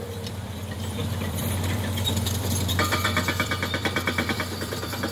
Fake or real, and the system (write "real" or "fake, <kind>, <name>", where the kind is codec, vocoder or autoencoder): fake, vocoder, BigVGAN v2